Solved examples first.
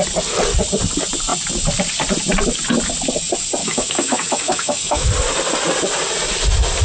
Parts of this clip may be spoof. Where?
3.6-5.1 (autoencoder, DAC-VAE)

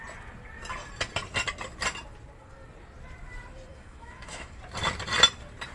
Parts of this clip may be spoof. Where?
3.7-4.6 (autoencoder, DAC-VAE)

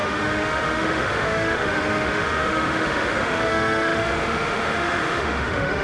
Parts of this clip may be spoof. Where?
0.0-5.8 (autoencoder, DAC-VAE)

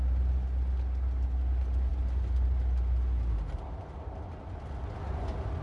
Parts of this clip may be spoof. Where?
none

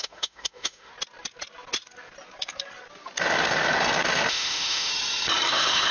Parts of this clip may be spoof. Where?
0.0-0.9 (autoencoder, DAC-VAE); 4.3-4.9; 5.5-5.9

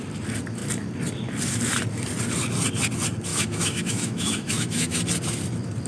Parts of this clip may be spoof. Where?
3.3-5.0 (autoencoder, DAC-VAE)